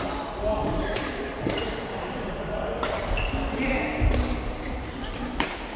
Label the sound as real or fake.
real